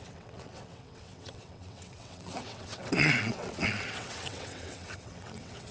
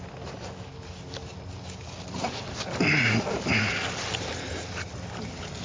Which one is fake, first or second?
first